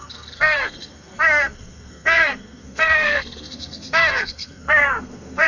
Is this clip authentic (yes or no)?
no